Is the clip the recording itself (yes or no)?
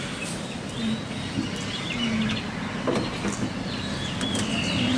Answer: yes